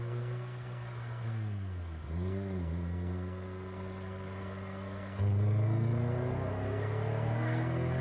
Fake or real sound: fake